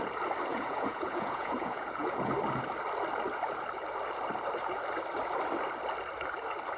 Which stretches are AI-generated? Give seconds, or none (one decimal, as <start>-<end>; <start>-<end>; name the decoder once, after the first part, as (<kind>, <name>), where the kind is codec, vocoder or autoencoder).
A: 0.5-2.3 (vocoder, Vocos)